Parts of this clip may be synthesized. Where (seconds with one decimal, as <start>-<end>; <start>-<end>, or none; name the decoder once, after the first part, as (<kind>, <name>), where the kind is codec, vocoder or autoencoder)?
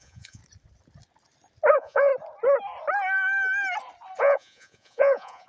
0.0-0.4 (vocoder, Vocos); 1.7-2.1; 4.2-5.5